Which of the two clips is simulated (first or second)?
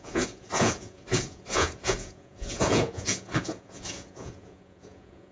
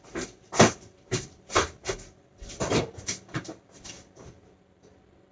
first